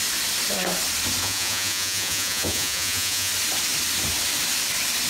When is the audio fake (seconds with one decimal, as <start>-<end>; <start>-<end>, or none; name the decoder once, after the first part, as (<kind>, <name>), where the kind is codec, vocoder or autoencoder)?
1.2-3.3 (vocoder, Vocos)